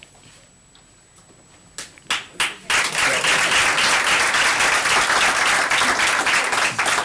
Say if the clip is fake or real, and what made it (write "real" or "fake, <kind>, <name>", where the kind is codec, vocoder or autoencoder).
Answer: real